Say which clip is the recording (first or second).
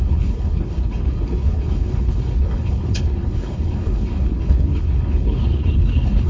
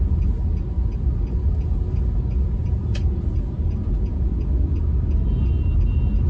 second